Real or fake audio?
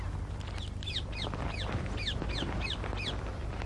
real